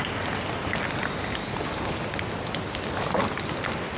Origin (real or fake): real